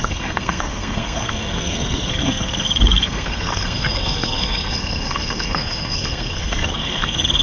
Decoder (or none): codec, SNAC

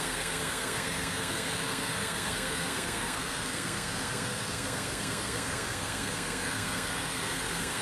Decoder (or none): codec, SNAC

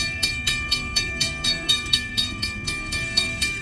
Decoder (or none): codec, SNAC